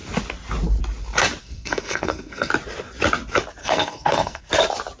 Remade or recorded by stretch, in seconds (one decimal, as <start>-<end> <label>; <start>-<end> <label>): 0.0-1.4 recorded; 1.4-2.5 remade; 2.5-3.6 recorded; 3.6-4.5 remade; 4.5-5.0 recorded